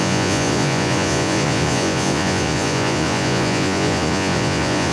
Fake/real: fake